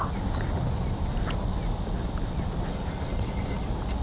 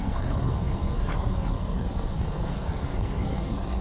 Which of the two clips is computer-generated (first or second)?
second